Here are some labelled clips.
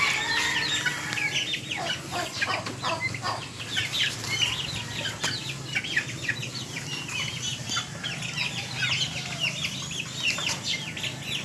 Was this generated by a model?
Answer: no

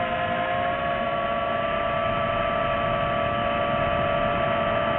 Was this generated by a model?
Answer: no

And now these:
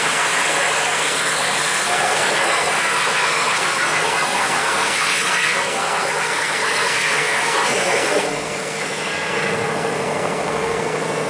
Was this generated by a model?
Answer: yes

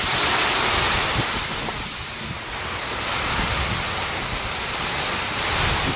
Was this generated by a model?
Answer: no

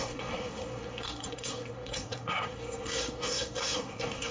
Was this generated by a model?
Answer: yes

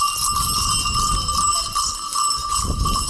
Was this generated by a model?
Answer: no